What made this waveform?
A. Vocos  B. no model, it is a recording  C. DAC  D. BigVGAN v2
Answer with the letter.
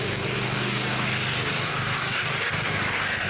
C